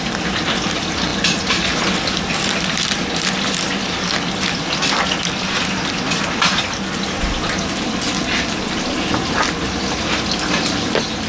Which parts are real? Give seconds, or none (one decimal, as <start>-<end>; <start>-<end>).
0.0-11.3